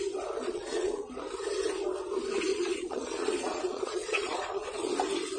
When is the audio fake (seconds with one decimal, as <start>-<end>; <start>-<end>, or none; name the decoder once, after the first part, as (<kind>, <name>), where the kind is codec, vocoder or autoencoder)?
0.4-1.1 (vocoder, Vocos); 2.5-4.9